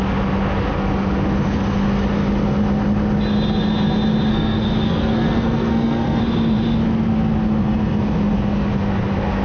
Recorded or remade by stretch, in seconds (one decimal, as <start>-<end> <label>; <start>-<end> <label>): 0.0-4.3 recorded; 4.3-6.2 remade; 6.2-9.4 recorded